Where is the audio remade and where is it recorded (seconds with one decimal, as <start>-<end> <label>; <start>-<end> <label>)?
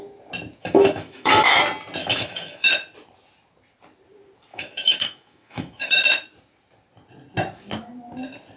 0.0-0.6 recorded; 0.6-1.5 remade; 1.5-2.0 recorded; 2.0-2.7 remade; 2.7-4.5 recorded; 4.5-6.0 remade; 6.0-8.6 recorded